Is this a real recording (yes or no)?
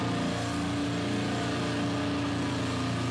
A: yes